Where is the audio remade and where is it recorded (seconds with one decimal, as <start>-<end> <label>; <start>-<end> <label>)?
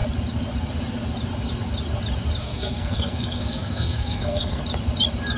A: 0.0-2.4 recorded; 2.4-4.6 remade; 4.6-5.4 recorded